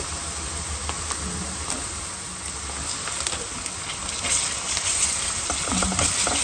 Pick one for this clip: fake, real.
real